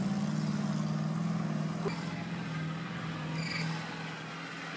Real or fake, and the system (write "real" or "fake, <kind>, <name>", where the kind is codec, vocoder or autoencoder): real